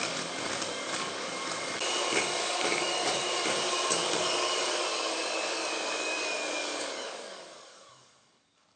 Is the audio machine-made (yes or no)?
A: yes